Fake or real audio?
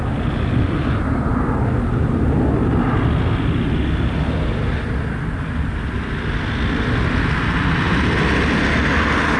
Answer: real